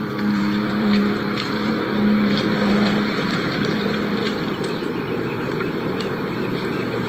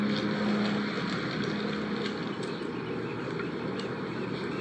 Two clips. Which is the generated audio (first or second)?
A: first